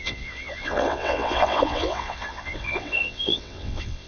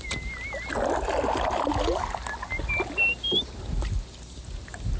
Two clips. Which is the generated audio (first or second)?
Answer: first